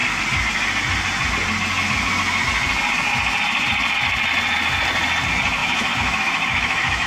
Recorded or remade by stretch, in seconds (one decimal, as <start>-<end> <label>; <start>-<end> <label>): 0.0-5.6 recorded; 5.6-7.1 remade